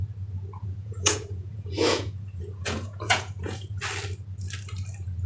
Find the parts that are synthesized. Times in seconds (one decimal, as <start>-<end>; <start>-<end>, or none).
0.6-3.8